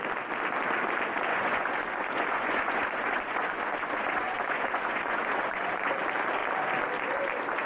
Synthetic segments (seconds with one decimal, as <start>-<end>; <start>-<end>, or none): 1.3-5.9